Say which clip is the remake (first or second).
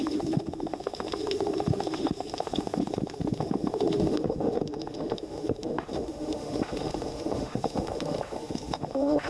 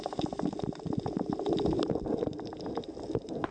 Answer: first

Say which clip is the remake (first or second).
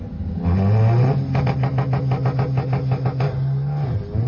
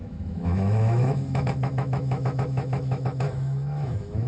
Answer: second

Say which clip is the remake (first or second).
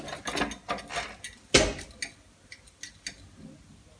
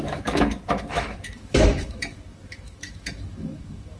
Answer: second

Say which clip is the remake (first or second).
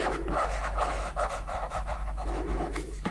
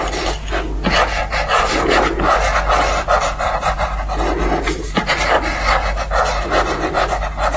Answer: first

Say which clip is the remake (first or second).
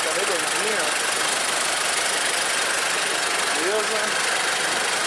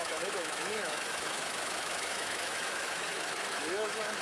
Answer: second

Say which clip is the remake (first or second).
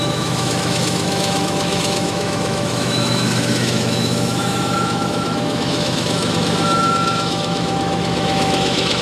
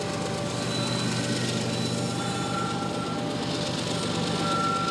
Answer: first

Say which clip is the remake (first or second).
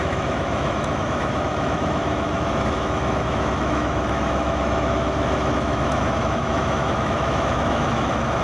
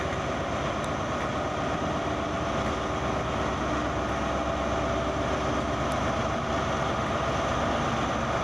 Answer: first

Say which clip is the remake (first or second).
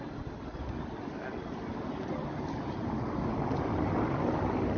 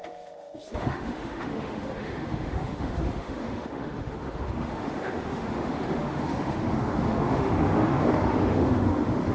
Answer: second